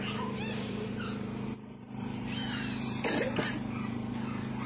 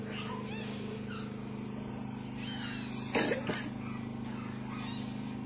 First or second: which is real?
second